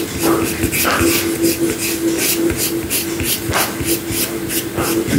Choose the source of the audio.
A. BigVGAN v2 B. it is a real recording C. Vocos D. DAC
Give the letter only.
B